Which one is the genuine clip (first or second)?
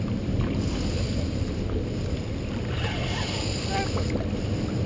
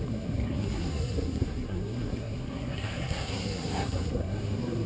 first